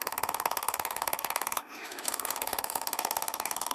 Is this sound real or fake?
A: fake